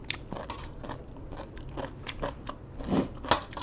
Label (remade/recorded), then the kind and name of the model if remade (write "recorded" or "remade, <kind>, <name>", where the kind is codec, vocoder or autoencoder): recorded